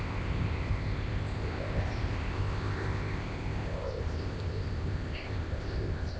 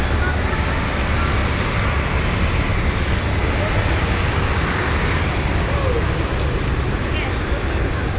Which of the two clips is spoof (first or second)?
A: first